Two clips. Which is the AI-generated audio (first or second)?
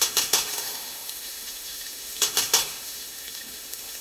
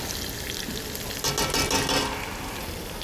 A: first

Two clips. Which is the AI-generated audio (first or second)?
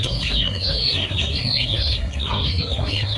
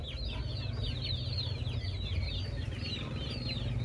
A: first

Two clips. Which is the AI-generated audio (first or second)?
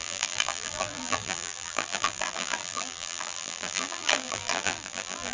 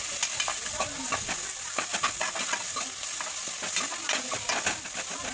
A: first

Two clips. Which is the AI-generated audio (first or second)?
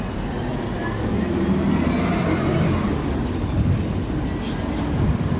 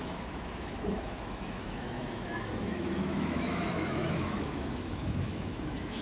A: second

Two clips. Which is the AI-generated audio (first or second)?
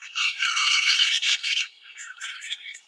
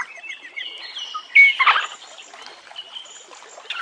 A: first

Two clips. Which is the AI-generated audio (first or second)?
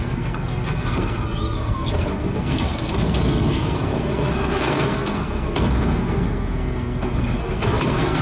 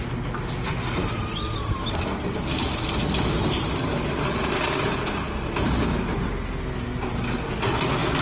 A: first